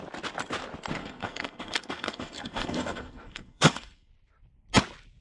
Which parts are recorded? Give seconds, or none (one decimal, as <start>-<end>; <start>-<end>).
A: 0.0-1.0; 4.1-5.2